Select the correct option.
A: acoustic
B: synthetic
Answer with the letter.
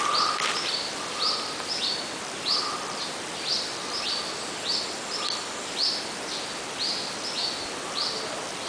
A